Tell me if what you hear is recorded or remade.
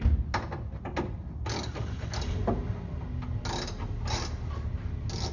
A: recorded